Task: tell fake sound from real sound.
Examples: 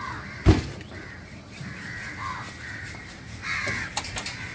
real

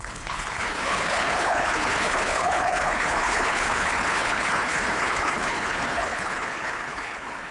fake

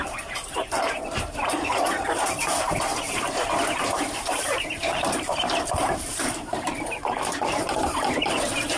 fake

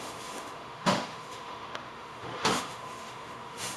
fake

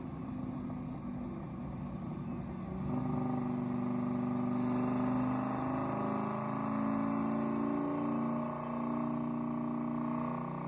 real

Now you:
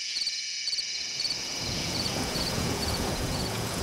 fake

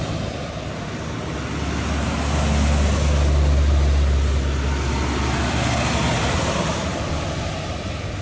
real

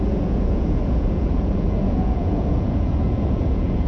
fake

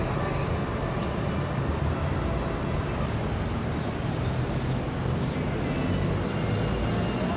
real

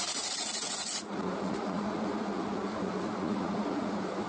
fake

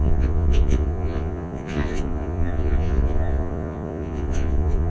fake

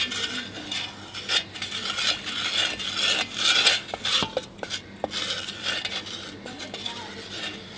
real